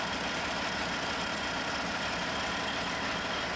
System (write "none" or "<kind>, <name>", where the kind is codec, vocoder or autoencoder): none